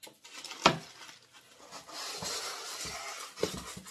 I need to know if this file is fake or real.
real